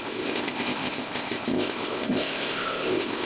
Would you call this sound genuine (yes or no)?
no